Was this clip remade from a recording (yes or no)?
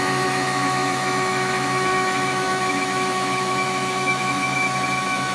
yes